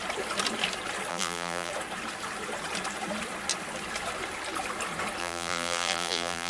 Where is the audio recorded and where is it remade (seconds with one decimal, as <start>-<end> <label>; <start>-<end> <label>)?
0.0-1.1 recorded; 1.1-1.7 remade; 1.7-5.2 recorded; 5.2-6.5 remade